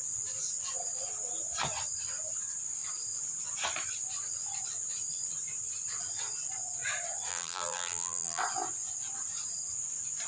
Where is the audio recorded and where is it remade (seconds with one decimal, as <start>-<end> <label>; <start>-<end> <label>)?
0.0-7.3 recorded; 7.3-8.4 remade; 8.4-10.3 recorded

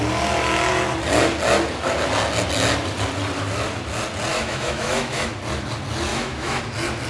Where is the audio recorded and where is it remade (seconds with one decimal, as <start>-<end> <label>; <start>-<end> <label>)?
0.0-4.3 recorded; 4.3-5.3 remade; 5.3-6.1 recorded; 6.1-6.6 remade; 6.6-7.1 recorded

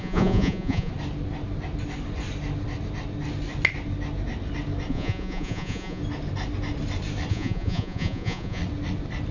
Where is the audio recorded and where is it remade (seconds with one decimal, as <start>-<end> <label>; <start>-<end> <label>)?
0.0-0.9 remade; 0.9-4.9 recorded; 4.9-6.0 remade; 6.0-7.3 recorded; 7.3-8.6 remade; 8.6-9.3 recorded

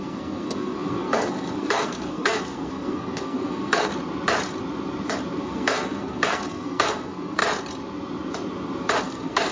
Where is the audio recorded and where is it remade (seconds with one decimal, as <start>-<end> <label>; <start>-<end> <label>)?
0.0-3.9 remade; 3.9-5.4 recorded; 5.4-7.4 remade; 7.4-9.0 recorded; 9.0-9.5 remade

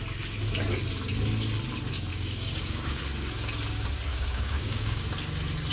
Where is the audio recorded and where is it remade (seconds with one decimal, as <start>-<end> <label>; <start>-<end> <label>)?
0.0-2.1 recorded; 2.1-3.0 remade; 3.0-4.1 recorded; 4.1-5.0 remade; 5.0-5.7 recorded

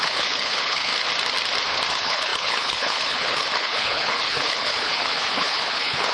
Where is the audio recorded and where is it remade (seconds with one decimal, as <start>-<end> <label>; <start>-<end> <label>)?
0.0-0.9 remade; 0.9-1.9 recorded; 1.9-6.1 remade